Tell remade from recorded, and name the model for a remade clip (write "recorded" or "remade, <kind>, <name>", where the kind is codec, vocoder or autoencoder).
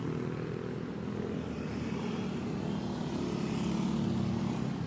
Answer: recorded